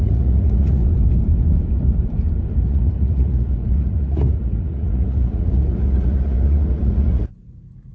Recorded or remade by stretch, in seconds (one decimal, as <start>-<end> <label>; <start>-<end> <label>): 0.0-0.8 remade; 0.8-2.7 recorded; 2.7-7.9 remade